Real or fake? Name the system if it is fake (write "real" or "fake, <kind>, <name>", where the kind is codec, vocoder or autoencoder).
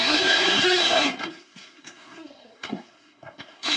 fake, codec, SNAC